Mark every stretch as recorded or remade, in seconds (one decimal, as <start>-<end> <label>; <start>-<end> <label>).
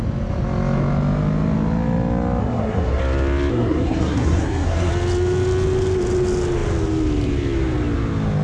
0.0-2.4 recorded; 2.4-3.0 remade; 3.0-3.5 recorded; 3.5-4.9 remade; 4.9-8.4 recorded